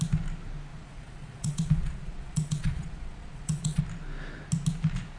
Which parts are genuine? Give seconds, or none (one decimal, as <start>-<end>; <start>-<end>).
0.0-0.7; 3.8-5.2